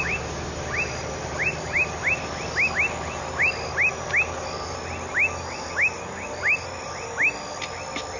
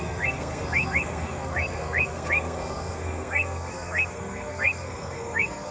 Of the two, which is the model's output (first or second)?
second